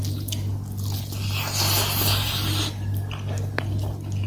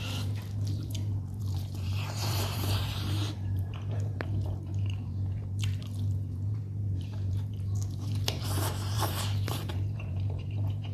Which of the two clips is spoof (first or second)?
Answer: second